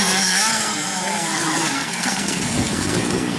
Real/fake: fake